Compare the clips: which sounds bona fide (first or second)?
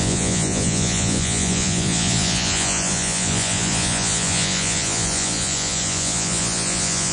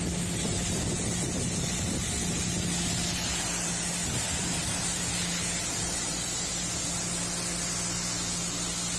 second